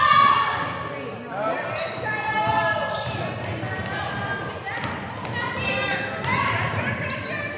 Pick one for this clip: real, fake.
real